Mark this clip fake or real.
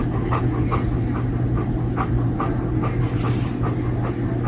real